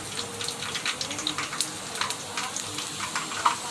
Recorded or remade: recorded